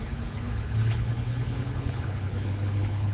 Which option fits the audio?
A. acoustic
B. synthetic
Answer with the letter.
B